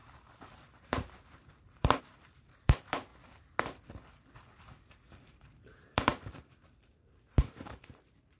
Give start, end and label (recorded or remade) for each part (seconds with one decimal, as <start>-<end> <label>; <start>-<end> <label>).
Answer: 0.0-3.1 remade; 3.1-5.4 recorded; 5.4-8.4 remade